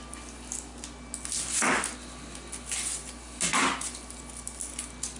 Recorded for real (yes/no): yes